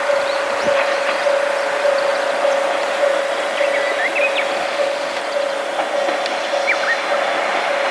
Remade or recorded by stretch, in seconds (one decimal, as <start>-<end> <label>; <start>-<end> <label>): 0.0-4.6 recorded; 4.6-5.2 remade; 5.2-7.9 recorded